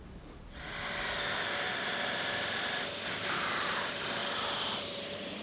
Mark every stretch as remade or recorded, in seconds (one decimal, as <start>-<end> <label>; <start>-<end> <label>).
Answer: 0.0-3.2 recorded; 3.2-4.2 remade; 4.2-4.8 recorded; 4.8-5.4 remade